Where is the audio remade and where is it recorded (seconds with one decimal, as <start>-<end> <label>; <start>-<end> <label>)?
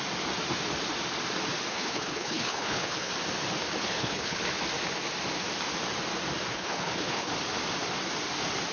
0.0-1.7 recorded; 1.7-3.1 remade; 3.1-3.8 recorded; 3.8-4.4 remade; 4.4-6.5 recorded; 6.5-7.3 remade; 7.3-8.7 recorded